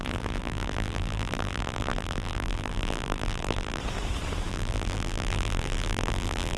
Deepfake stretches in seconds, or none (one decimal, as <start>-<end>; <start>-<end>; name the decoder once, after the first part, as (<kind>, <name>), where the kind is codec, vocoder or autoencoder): 0.0-3.8 (vocoder, BigVGAN v2); 4.5-6.6